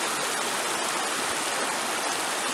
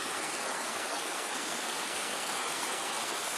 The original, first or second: first